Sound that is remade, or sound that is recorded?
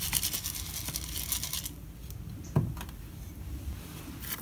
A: recorded